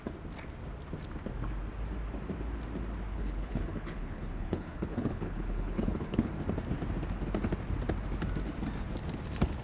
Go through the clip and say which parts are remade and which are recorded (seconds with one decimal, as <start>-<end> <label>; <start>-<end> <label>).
0.0-3.1 recorded; 3.1-6.3 remade; 6.3-9.6 recorded